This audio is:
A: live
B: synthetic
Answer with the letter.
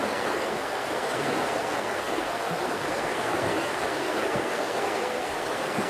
B